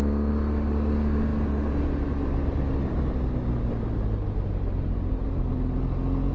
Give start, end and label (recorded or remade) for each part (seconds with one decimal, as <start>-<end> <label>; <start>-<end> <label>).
0.0-6.3 recorded